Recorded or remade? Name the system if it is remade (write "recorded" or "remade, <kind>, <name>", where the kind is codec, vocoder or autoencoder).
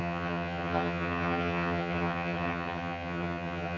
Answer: remade, vocoder, HiFi-GAN